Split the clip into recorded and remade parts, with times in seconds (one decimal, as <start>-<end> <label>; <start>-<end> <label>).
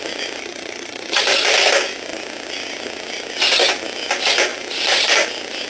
0.0-0.4 recorded; 0.4-1.2 remade; 1.2-5.7 recorded